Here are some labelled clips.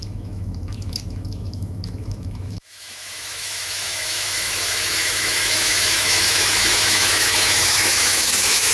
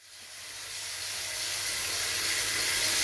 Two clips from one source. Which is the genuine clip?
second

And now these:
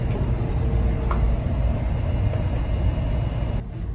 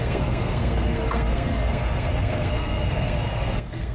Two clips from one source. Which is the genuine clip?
first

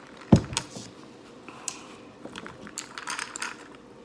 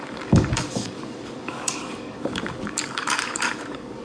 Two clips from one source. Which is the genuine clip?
first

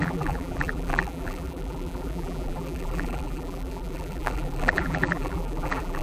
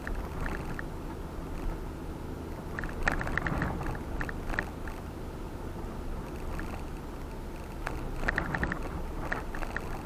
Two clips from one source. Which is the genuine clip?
second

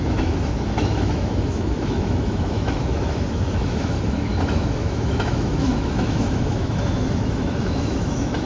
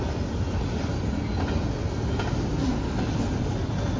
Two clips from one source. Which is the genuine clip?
second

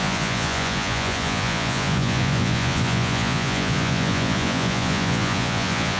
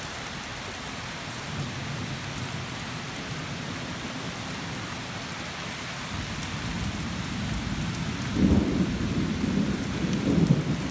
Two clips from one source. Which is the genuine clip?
second